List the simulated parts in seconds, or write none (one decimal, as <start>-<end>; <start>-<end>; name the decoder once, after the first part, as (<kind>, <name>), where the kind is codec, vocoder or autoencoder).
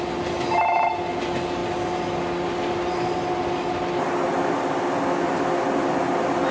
none